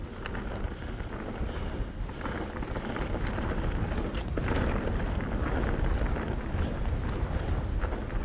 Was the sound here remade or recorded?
recorded